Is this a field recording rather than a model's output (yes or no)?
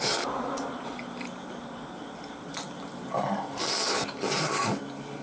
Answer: yes